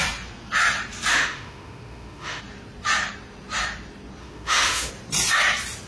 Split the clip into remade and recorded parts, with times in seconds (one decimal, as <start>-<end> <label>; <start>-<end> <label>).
0.0-1.1 recorded; 1.1-2.4 remade; 2.4-4.2 recorded; 4.2-4.9 remade; 4.9-5.9 recorded